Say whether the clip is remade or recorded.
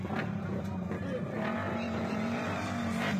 remade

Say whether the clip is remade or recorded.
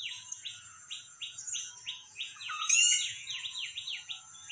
remade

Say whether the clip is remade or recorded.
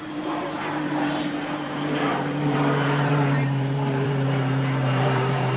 remade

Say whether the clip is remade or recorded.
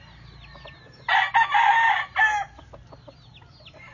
recorded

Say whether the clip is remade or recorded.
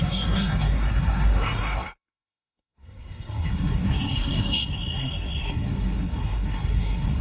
remade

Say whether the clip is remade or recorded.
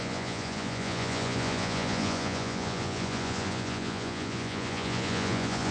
remade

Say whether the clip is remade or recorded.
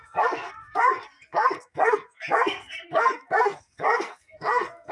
remade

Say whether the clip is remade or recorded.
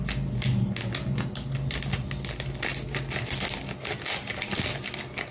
recorded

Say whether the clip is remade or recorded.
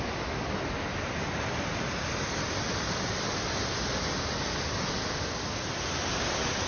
recorded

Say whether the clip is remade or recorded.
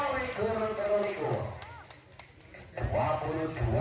recorded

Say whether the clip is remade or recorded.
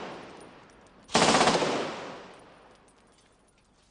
recorded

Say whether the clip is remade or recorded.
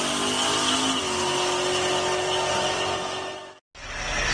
recorded